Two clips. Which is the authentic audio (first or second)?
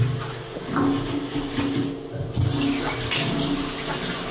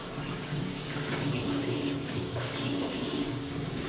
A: first